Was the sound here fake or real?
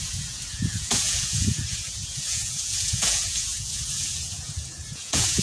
fake